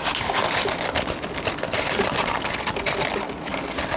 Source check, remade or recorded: recorded